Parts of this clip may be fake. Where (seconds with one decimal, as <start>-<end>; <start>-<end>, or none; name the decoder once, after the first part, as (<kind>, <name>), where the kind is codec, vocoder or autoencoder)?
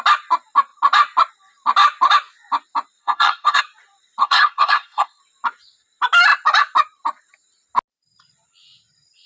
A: 3.0-3.6 (codec, SNAC); 4.2-5.2